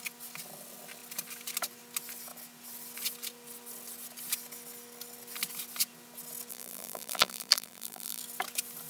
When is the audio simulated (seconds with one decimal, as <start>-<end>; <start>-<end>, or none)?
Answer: 6.5-8.2

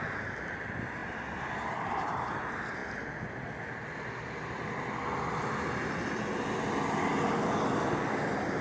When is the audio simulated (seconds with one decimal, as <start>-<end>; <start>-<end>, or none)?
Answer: 0.0-1.0; 1.7-2.8; 8.0-8.6

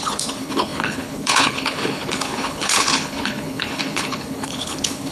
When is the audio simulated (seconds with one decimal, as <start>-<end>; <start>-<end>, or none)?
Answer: 0.0-5.1

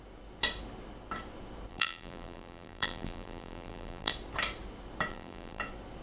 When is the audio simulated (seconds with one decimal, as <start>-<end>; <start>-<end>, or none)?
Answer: 1.7-4.1; 5.1-5.6

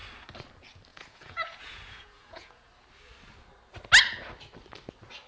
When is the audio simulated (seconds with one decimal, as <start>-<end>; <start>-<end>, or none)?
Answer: 0.9-2.7